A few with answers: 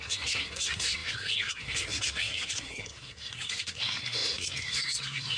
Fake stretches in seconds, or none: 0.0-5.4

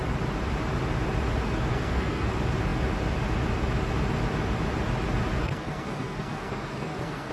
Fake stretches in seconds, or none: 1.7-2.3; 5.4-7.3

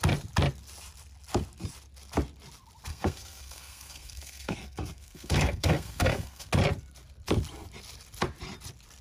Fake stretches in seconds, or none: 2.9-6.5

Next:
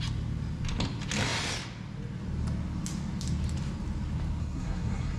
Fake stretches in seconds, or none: 4.4-5.2

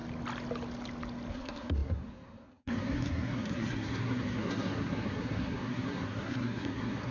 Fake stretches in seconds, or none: 1.3-7.1

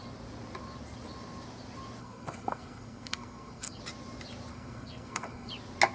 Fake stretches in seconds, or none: 2.0-3.8; 4.5-5.5

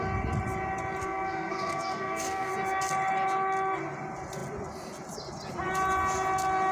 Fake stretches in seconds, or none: 1.0-2.5

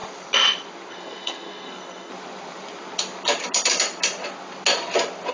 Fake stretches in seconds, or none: 0.9-2.1